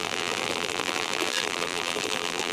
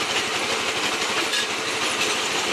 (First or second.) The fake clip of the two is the first